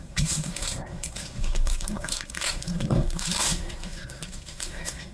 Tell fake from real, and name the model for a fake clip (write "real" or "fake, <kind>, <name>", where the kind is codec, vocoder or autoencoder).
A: fake, codec, SNAC